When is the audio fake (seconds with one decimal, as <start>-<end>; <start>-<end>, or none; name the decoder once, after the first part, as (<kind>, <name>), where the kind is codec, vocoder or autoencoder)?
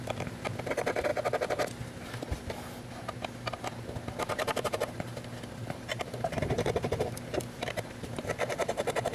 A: 0.0-1.1 (vocoder, BigVGAN v2); 4.2-9.1